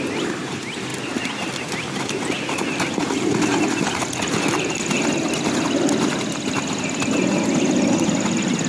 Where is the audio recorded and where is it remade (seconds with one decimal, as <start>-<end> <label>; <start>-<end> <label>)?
0.0-8.7 recorded